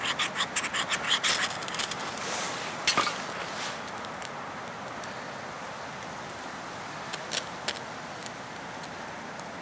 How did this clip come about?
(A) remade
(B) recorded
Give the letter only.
B